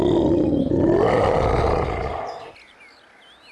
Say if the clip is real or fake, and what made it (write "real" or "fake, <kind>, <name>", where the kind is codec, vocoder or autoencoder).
real